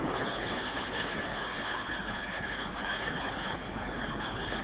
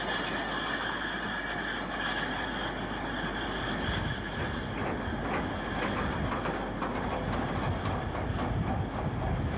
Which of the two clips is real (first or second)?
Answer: second